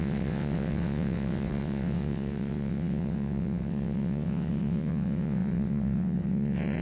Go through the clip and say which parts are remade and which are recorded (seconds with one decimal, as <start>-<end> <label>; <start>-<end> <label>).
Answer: 0.0-6.8 remade